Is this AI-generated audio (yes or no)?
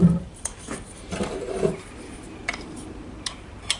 yes